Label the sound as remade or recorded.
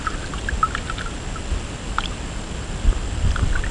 recorded